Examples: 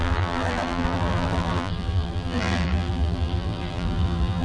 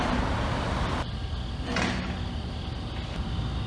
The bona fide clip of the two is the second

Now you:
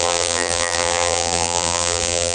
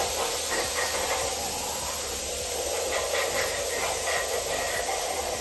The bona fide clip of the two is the second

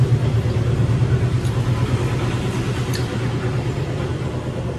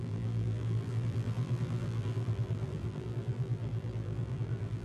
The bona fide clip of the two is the first